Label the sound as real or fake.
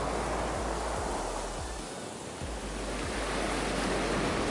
real